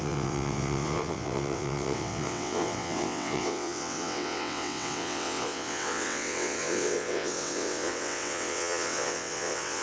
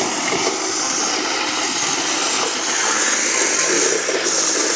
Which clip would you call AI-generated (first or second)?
first